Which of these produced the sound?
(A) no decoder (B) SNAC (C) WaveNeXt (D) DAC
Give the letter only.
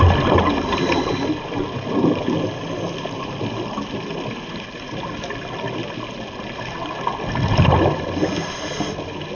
A